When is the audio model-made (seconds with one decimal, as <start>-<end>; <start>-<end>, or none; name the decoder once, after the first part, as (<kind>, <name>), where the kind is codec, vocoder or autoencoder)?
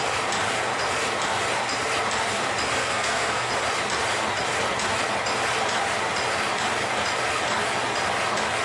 2.8-3.5 (codec, SNAC)